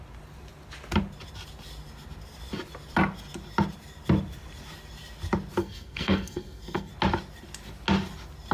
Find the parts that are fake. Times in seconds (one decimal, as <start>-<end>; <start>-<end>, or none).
5.6-6.9